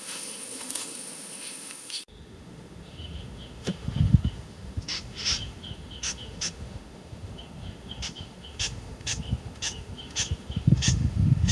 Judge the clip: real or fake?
fake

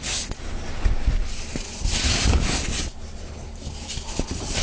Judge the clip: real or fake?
real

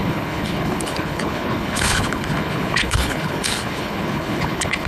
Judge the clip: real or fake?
fake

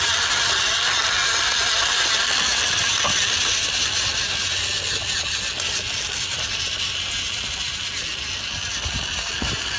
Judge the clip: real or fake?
real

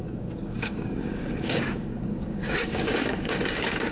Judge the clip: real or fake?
fake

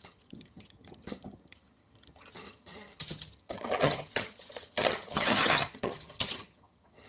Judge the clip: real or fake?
fake